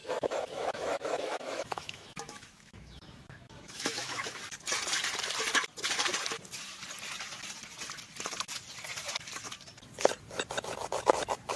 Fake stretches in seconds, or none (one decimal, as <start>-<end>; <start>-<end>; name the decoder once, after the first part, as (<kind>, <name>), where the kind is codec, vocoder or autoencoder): 0.0-4.4 (autoencoder, DAC-VAE)